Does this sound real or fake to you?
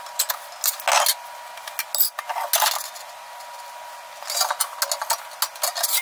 real